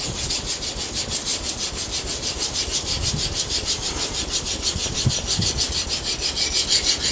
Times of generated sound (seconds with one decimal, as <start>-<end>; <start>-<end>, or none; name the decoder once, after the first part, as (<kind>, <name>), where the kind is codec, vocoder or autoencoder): 1.3-5.5 (vocoder, BigVGAN v2)